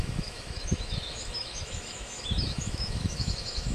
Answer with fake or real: fake